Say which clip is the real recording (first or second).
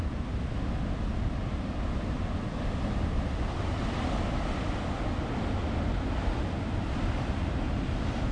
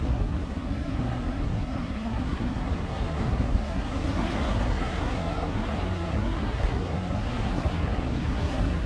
first